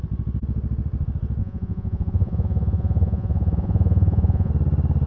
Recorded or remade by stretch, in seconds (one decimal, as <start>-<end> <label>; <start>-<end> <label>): 0.0-1.4 recorded; 1.4-4.5 remade; 4.5-5.1 recorded